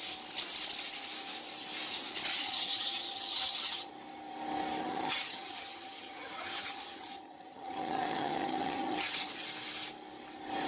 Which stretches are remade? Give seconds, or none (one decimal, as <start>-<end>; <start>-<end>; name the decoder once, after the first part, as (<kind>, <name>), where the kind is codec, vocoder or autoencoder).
2.3-3.9 (vocoder, HiFi-GAN); 4.8-9.3